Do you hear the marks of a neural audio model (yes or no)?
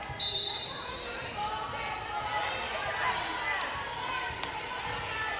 no